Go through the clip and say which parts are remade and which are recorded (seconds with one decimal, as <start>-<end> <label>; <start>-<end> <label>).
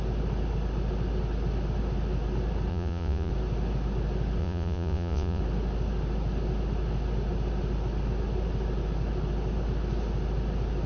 0.0-2.7 recorded; 2.7-3.3 remade; 3.3-4.4 recorded; 4.4-5.4 remade; 5.4-10.9 recorded